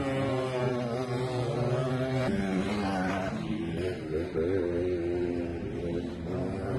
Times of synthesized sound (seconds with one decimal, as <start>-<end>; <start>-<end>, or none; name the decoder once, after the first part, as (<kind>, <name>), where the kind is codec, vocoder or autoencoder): none